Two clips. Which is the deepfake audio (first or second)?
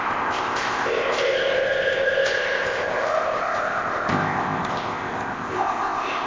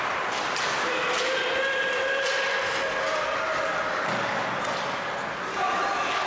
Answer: first